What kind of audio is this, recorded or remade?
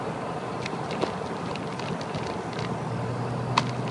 recorded